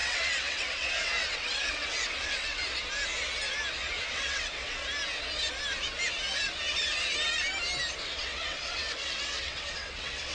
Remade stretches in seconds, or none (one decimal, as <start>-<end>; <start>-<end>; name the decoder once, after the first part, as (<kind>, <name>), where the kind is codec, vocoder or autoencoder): 0.0-2.6 (vocoder, WaveNeXt); 4.1-4.8; 8.0-10.3